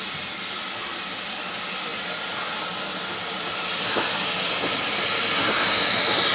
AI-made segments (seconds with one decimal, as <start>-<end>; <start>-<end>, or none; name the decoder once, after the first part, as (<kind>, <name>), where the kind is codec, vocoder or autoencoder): none